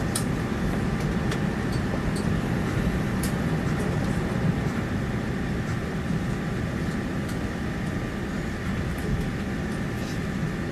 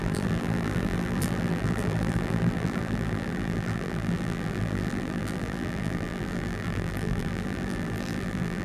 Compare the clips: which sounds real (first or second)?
first